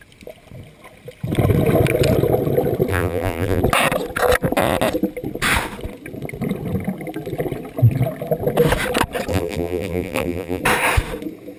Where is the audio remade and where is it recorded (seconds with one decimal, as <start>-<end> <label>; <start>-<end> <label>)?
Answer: 0.0-2.9 recorded; 2.9-3.6 remade; 3.6-9.3 recorded; 9.3-10.6 remade; 10.6-11.6 recorded